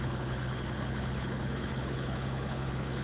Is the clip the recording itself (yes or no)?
no